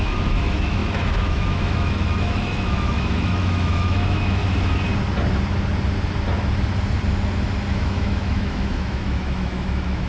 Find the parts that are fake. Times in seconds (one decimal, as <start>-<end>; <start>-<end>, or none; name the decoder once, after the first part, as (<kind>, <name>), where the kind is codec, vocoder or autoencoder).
0.0-4.4 (autoencoder, DAC-VAE); 7.7-10.1